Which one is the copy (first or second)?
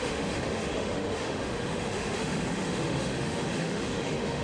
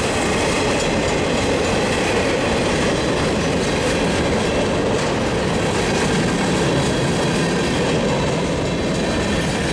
first